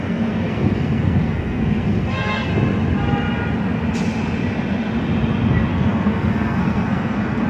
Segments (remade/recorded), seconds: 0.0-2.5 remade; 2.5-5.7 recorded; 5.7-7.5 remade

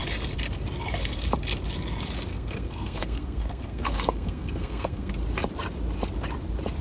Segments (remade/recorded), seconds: 0.0-2.3 recorded; 2.3-5.1 remade; 5.1-6.8 recorded

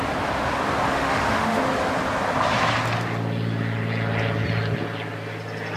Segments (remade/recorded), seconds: 0.0-0.9 recorded; 0.9-1.6 remade; 1.6-5.8 recorded